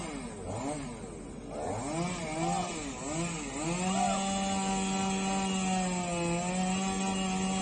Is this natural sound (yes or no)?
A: yes